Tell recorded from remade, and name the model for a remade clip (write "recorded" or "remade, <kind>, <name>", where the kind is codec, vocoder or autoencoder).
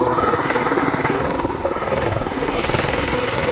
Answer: remade, codec, SNAC